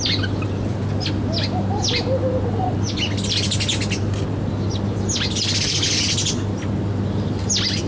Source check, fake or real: real